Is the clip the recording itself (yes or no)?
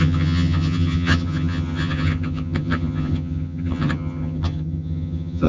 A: no